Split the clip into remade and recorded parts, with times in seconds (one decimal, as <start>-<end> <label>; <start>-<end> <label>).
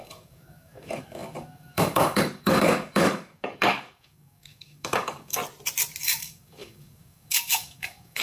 0.0-5.4 remade; 5.4-6.0 recorded; 6.0-8.2 remade